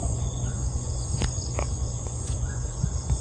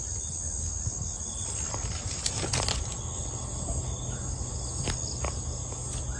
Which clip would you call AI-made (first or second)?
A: first